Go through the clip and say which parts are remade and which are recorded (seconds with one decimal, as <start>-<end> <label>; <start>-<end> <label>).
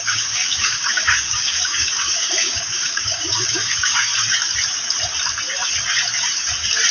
0.0-4.1 remade; 4.1-6.9 recorded